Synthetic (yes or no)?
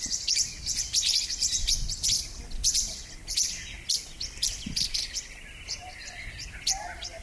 yes